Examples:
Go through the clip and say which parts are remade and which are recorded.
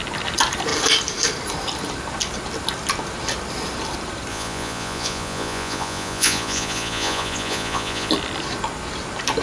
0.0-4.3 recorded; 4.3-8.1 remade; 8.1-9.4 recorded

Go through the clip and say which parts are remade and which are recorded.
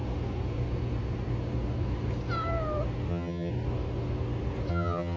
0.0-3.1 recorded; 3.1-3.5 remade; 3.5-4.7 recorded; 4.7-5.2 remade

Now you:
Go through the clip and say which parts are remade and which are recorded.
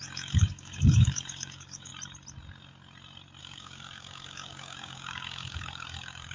0.0-1.9 remade; 1.9-3.4 recorded; 3.4-6.3 remade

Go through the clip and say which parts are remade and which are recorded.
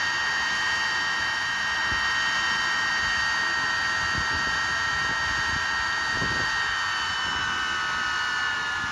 0.0-8.9 recorded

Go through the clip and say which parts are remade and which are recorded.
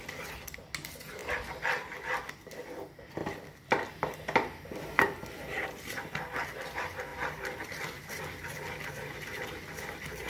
0.0-1.2 recorded; 1.2-2.2 remade; 2.2-7.1 recorded; 7.1-8.2 remade; 8.2-10.3 recorded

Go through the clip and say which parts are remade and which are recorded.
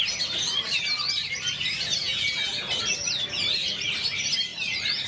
0.0-2.0 recorded; 2.0-2.7 remade; 2.7-5.1 recorded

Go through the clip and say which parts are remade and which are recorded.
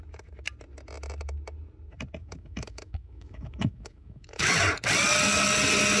0.0-2.2 recorded; 2.2-4.5 remade; 4.5-6.0 recorded